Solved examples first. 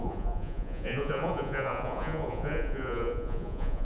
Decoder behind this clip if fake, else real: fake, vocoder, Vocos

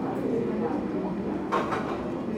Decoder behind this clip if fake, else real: real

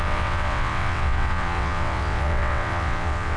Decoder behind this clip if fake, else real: fake, vocoder, WaveNeXt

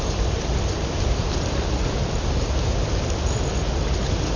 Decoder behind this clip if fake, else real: real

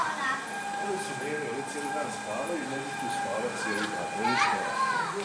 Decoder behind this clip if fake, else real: real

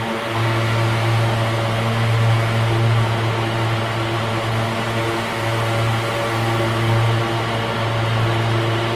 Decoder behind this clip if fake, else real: real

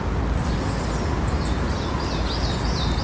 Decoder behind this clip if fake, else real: real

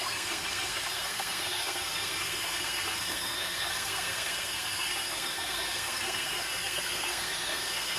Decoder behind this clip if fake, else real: fake, codec, SNAC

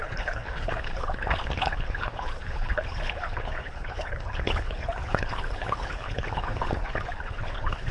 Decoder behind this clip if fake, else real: fake, codec, HILCodec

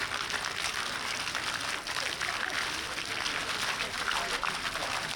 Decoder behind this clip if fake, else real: real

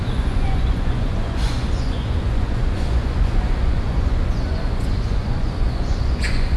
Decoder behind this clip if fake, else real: fake, vocoder, Vocos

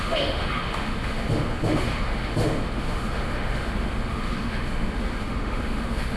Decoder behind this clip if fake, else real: fake, autoencoder, DAC-VAE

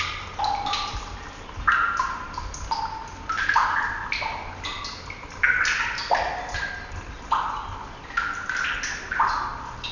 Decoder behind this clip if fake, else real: real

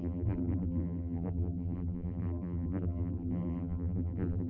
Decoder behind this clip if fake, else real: fake, vocoder, BigVGAN v2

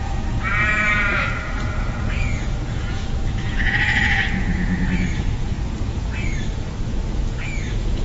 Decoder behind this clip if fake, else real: fake, vocoder, Vocos